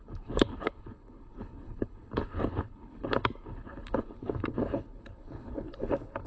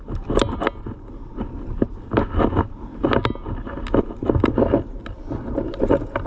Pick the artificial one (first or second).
first